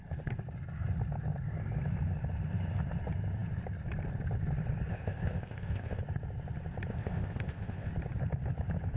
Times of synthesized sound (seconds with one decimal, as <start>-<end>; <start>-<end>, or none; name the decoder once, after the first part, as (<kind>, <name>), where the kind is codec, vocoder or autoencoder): 4.9-6.0 (codec, ZipCodec); 6.9-7.9